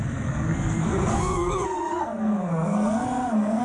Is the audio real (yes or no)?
no